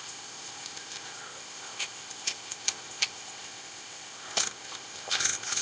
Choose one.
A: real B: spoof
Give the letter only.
B